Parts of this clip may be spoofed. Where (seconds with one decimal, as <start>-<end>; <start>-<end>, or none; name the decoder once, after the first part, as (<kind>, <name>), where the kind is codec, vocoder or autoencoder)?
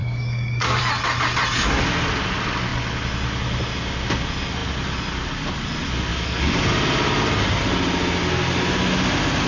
0.0-0.8 (codec, DAC); 6.1-6.6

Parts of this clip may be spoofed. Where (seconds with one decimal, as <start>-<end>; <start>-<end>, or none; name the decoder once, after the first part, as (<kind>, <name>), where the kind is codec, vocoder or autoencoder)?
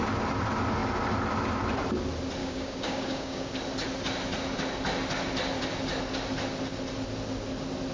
2.4-3.5 (codec, DAC)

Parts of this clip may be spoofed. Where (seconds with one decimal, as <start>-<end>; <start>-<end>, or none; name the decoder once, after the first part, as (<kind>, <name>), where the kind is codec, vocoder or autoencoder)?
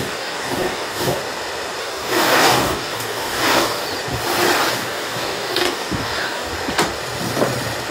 0.0-1.2 (codec, DAC); 1.8-3.8; 4.7-6.5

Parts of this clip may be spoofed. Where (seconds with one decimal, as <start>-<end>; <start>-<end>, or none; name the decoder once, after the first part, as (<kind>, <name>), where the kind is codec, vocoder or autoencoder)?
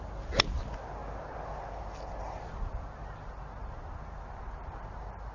none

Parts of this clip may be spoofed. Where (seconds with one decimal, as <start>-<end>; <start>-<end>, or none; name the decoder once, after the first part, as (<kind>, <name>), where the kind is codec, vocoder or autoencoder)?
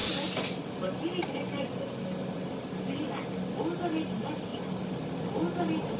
none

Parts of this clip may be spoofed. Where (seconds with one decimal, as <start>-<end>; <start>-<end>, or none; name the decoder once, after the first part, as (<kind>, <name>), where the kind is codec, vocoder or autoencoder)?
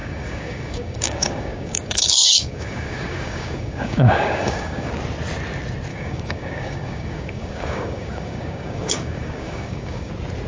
0.0-4.9 (codec, DAC); 5.9-10.1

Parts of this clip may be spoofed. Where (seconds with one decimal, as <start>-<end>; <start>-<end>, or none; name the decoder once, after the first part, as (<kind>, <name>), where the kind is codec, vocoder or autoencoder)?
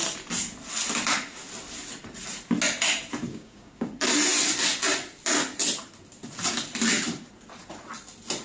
3.3-3.9 (codec, DAC)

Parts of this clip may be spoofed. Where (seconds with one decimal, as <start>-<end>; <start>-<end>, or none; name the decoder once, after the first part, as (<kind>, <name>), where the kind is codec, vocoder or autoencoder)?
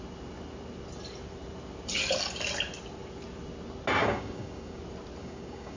4.0-4.8 (codec, DAC); 5.2-5.8